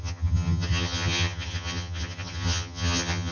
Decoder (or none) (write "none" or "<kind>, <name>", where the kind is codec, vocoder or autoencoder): vocoder, HiFi-GAN